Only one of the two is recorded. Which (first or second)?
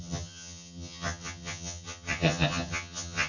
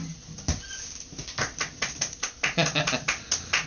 second